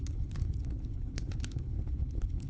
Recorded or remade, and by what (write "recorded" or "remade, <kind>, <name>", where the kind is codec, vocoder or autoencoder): remade, codec, HILCodec